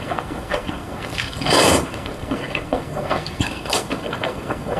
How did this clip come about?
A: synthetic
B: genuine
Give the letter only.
A